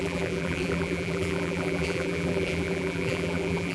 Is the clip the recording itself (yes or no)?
no